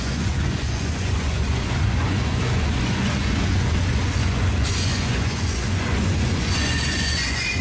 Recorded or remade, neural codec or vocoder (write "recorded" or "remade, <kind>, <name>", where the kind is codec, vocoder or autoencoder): remade, vocoder, Vocos